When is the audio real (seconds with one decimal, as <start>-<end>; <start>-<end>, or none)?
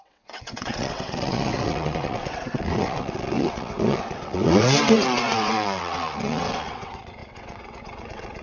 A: none